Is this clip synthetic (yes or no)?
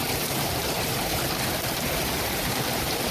yes